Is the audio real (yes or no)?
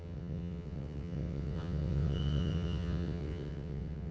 no